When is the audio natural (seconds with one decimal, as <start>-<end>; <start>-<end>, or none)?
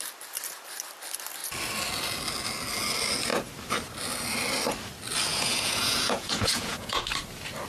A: 0.0-5.3; 7.0-7.7